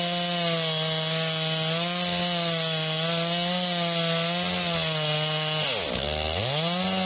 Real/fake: real